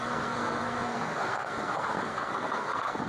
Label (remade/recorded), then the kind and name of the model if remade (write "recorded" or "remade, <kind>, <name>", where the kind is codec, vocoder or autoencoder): remade, codec, SNAC